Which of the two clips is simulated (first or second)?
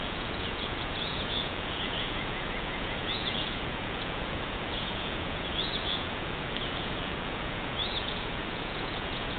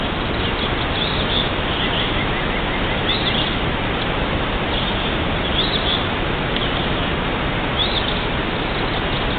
first